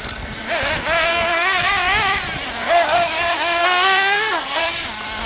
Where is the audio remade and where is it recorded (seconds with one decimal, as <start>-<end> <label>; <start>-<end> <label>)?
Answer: 0.0-1.1 recorded; 1.1-1.7 remade; 1.7-3.6 recorded; 3.6-4.6 remade; 4.6-5.3 recorded